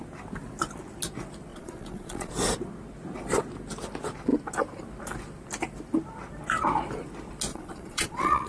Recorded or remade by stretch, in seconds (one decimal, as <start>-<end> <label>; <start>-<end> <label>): 0.0-1.5 recorded; 1.5-2.3 remade; 2.3-7.5 recorded; 7.5-8.5 remade